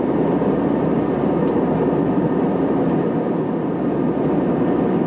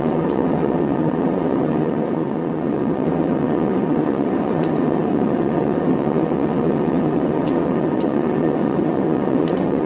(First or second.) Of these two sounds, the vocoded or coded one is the second